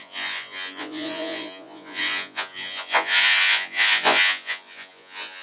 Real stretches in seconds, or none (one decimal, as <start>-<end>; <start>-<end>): none